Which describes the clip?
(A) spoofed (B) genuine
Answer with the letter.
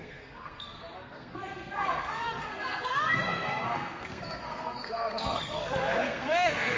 A